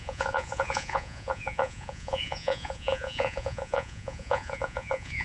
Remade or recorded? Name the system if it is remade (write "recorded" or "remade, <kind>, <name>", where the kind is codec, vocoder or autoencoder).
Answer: remade, vocoder, Vocos